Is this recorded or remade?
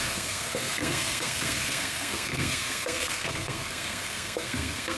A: remade